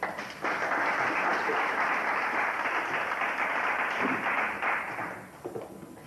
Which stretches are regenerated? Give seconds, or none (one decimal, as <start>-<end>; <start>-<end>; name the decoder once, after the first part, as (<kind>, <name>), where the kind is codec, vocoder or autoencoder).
none